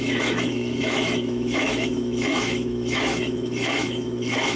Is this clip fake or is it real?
fake